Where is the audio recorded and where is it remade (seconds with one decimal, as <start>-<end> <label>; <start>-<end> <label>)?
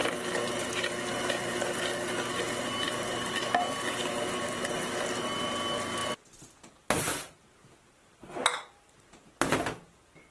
0.0-10.3 recorded